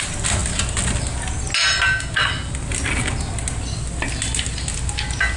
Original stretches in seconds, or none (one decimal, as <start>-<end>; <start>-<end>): 0.0-5.4

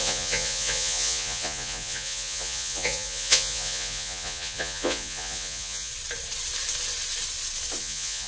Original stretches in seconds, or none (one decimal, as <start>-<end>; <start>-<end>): 5.9-7.8

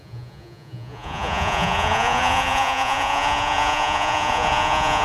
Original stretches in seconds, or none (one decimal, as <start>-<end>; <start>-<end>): none

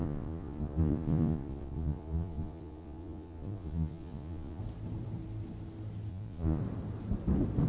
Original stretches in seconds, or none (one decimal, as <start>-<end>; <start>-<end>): 4.6-6.1; 6.6-7.7

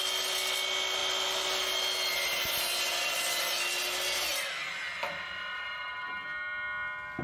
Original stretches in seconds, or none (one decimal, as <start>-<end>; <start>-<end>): 0.0-7.2

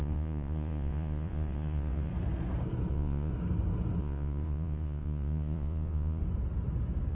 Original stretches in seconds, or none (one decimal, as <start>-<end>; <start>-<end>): 2.1-2.9; 3.3-4.0; 6.2-7.1